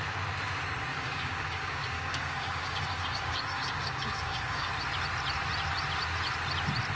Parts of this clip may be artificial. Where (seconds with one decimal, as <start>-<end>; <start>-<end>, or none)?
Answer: 0.9-4.7